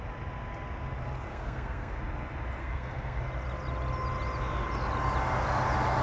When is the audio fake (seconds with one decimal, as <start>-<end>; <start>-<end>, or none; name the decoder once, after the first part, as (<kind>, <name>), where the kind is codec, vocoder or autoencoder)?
1.3-2.0 (codec, SNAC); 2.6-3.2

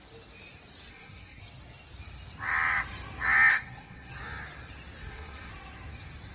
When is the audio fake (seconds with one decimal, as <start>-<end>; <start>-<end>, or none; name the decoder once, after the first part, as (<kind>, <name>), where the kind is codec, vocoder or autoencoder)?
0.9-1.4 (codec, SNAC); 3.5-4.1; 5.0-5.5

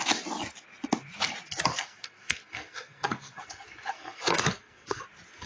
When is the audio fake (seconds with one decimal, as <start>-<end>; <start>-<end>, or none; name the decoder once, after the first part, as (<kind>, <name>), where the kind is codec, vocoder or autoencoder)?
1.7-5.0 (codec, SNAC)

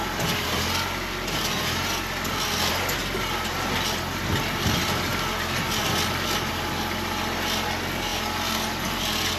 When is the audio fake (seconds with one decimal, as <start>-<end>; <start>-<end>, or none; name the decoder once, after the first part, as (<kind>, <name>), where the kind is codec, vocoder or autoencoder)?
none

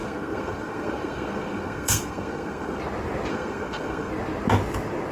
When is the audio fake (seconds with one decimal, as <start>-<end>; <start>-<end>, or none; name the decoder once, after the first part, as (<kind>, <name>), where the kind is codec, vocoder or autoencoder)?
0.0-2.8 (codec, SNAC); 3.3-4.1

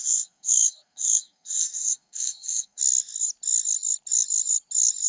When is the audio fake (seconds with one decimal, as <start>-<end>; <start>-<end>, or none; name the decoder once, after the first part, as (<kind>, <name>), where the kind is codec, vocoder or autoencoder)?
0.0-2.8 (codec, SNAC)